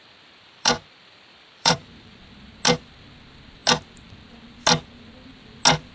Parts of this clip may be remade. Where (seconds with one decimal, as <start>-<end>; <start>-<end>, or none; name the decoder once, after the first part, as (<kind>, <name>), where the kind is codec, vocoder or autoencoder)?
0.0-2.2 (vocoder, BigVGAN v2)